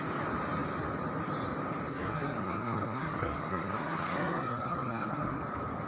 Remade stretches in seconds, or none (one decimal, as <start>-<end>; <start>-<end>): 1.9-5.4